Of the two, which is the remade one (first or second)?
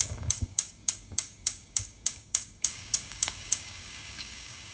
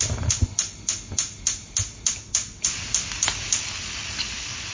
first